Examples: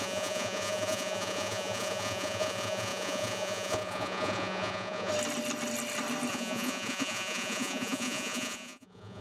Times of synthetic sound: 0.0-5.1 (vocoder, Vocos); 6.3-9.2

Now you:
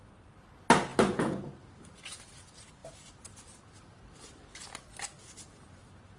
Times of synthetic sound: none

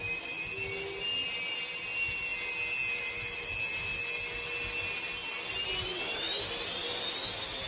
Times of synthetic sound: none

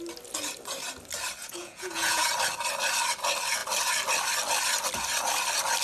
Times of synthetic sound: 1.4-2.3 (vocoder, Vocos)

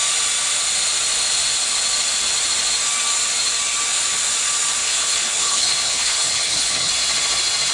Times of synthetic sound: 4.8-6.9 (codec, HILCodec)

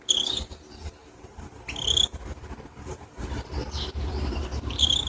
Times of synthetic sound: none